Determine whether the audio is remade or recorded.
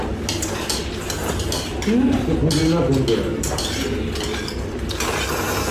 recorded